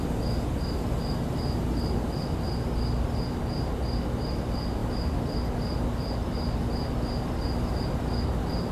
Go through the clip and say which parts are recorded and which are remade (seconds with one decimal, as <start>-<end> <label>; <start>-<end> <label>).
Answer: 0.0-8.7 recorded

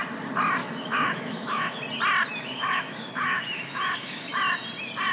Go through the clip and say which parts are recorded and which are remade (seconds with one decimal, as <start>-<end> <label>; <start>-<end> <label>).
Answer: 0.0-0.6 recorded; 0.6-1.8 remade; 1.8-2.3 recorded; 2.3-4.3 remade; 4.3-5.1 recorded

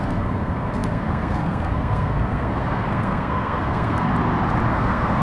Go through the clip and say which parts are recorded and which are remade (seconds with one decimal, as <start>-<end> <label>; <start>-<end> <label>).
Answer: 0.0-4.1 remade; 4.1-4.7 recorded; 4.7-5.2 remade

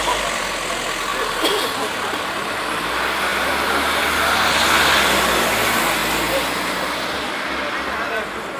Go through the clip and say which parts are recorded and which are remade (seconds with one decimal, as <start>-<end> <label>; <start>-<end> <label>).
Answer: 0.0-1.1 recorded; 1.1-2.5 remade; 2.5-3.3 recorded; 3.3-4.0 remade; 4.0-8.6 recorded

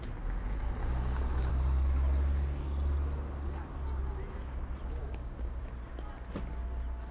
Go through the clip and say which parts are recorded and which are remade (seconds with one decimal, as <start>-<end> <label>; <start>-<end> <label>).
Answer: 0.0-0.8 recorded; 0.8-1.5 remade; 1.5-5.0 recorded; 5.0-5.6 remade; 5.6-7.1 recorded

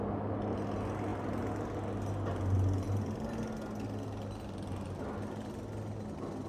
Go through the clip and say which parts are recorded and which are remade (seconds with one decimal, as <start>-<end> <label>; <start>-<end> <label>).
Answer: 0.0-6.5 recorded

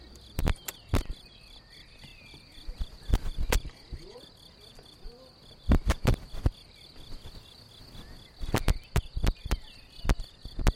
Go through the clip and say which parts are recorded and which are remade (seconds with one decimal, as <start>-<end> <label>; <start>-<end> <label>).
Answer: 0.0-10.8 recorded